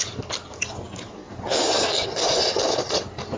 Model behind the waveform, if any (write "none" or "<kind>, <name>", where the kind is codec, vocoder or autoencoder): none